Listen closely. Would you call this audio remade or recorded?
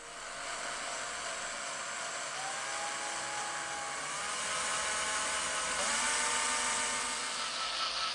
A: recorded